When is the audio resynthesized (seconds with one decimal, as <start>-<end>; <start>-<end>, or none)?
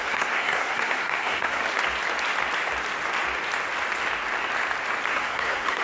0.0-1.6; 5.1-5.8